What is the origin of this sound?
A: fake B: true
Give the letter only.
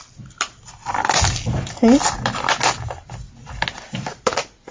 B